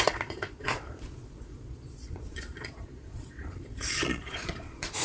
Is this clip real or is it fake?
fake